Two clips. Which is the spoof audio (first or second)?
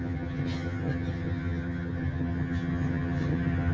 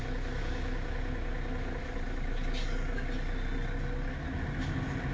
first